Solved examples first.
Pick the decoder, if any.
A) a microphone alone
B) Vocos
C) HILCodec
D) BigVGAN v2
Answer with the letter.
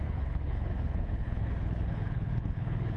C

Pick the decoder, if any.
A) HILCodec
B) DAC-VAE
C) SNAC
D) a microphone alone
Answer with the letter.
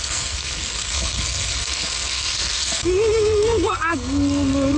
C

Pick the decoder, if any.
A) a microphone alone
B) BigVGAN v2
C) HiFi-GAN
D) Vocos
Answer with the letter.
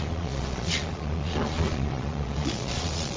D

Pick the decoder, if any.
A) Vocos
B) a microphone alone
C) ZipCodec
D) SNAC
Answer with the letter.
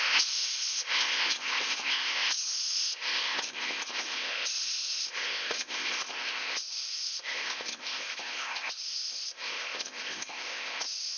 C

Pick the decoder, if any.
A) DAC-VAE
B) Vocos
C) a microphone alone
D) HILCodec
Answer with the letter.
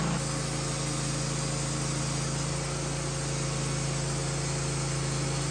C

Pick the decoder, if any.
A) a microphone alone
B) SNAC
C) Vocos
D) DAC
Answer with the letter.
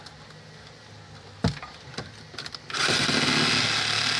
A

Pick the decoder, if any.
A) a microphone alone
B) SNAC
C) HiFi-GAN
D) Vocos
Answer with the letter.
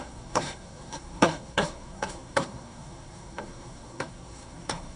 B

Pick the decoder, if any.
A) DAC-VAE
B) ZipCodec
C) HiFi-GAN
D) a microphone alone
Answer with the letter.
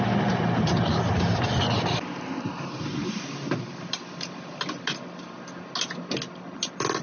D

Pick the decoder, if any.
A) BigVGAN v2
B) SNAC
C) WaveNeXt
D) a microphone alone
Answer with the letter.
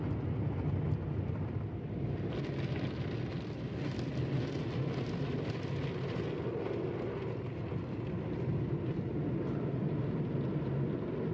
D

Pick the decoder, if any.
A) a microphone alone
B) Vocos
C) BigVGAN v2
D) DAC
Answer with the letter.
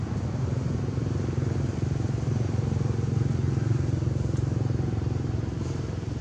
A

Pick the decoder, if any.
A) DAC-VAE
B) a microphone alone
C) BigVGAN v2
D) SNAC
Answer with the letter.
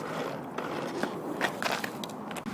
B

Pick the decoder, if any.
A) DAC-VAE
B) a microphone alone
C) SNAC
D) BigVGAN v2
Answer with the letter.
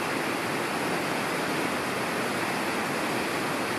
B